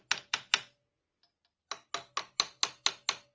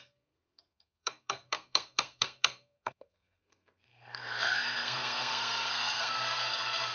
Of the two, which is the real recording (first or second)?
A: first